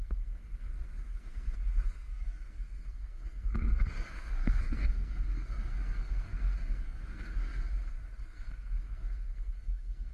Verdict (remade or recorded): remade